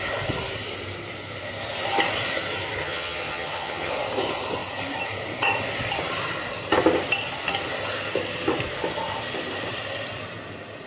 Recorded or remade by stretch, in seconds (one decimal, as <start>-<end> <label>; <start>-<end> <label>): 0.0-2.8 recorded; 2.8-3.9 remade; 3.9-10.9 recorded